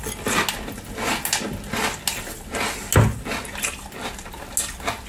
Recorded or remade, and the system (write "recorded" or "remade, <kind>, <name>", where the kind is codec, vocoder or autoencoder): recorded